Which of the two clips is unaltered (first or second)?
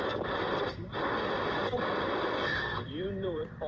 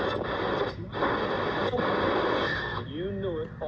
second